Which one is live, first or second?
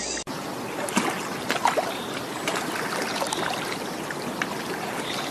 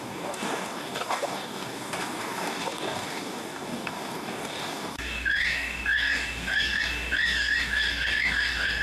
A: first